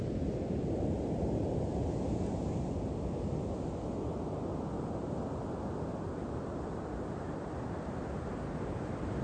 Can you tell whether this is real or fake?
real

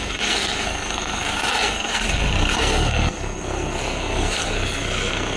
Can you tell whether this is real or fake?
fake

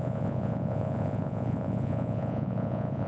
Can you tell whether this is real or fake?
fake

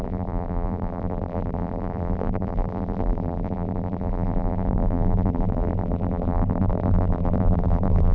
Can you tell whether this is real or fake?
fake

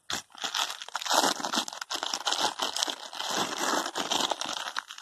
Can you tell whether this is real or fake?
real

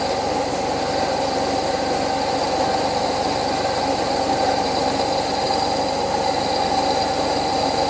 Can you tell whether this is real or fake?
real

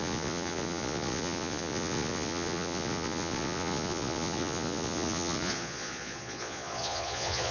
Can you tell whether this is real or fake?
fake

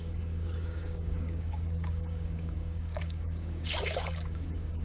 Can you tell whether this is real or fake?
fake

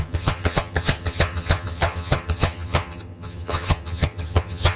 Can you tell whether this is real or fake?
fake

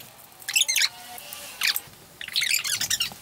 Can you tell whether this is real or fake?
real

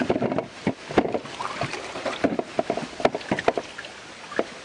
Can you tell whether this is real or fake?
real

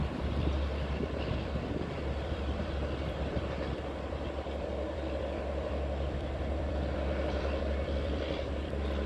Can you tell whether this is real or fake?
fake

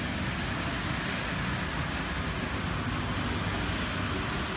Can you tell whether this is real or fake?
real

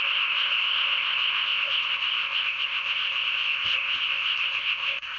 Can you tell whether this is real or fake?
fake